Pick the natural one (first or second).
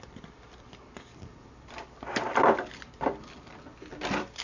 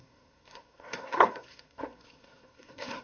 first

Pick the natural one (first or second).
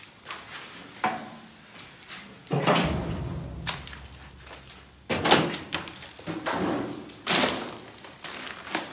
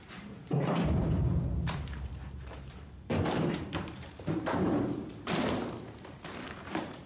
first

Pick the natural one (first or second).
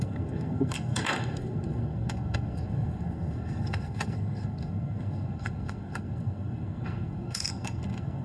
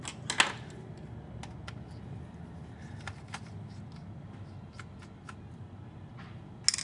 second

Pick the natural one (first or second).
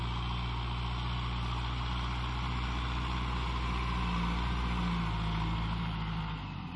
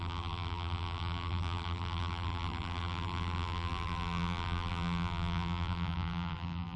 first